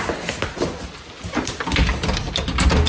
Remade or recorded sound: recorded